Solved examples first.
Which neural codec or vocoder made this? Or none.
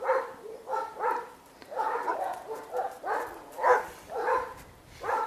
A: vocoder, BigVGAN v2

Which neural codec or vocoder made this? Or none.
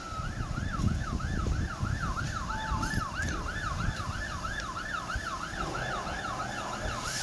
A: none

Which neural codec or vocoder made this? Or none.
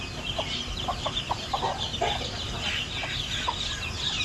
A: none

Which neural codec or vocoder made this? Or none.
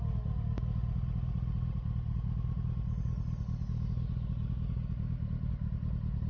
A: none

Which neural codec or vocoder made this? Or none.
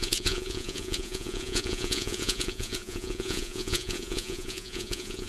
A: vocoder, Vocos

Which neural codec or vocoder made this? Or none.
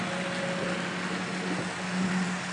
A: none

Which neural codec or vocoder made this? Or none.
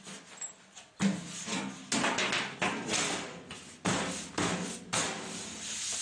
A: none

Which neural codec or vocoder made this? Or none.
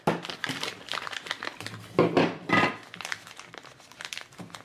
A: none